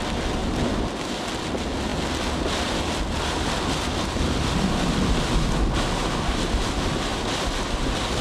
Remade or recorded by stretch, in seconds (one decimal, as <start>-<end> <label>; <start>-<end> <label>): 0.0-8.2 recorded